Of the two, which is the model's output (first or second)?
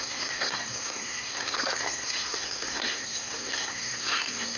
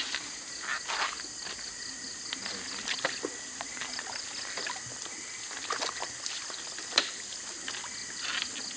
first